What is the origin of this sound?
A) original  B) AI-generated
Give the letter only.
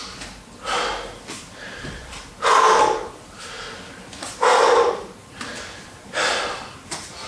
A